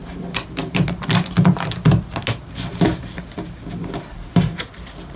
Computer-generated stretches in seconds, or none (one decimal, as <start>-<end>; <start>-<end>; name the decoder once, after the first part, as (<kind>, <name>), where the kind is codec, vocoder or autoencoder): none

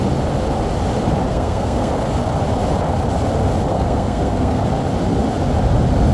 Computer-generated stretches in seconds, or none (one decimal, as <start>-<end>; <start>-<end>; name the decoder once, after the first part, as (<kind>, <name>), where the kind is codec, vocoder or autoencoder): 1.3-1.9 (codec, SNAC); 3.7-4.6

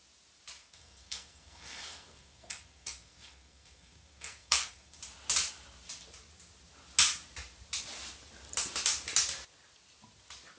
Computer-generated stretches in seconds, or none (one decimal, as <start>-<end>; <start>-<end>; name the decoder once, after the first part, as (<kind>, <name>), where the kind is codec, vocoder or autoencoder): 0.6-5.0 (codec, SNAC)